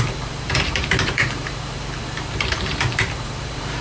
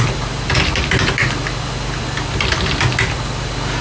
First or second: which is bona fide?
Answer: second